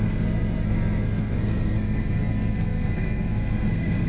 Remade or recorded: remade